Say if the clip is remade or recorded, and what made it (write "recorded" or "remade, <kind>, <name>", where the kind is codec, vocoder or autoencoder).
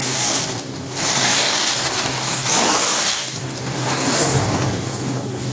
remade, codec, DAC